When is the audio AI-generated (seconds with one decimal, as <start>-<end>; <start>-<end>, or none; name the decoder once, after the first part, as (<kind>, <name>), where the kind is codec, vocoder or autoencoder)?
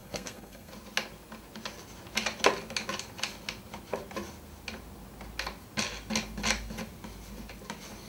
0.0-0.7 (codec, SNAC)